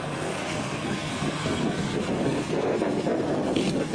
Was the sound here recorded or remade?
remade